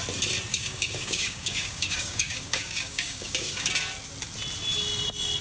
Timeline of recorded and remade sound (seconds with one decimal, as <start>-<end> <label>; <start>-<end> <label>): 0.0-0.5 recorded; 0.5-3.7 remade; 3.7-5.4 recorded